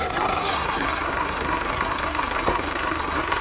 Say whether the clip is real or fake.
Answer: fake